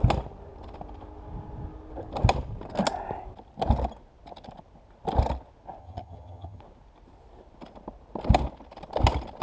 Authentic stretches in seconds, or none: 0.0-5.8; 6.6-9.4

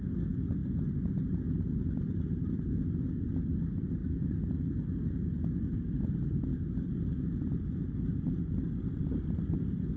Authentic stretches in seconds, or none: 0.0-10.0